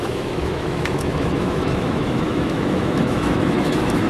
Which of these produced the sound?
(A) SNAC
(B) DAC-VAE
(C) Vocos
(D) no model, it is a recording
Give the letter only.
B